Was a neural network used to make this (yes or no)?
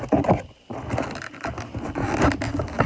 no